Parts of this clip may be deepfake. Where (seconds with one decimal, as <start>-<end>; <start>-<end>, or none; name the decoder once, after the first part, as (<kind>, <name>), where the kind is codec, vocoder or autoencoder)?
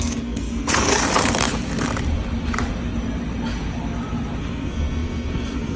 0.0-0.9 (codec, SNAC); 4.4-5.8